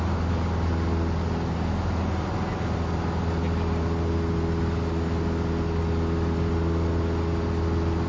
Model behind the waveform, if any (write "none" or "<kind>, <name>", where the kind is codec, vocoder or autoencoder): none